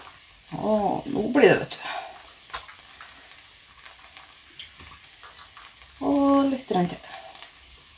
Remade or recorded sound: recorded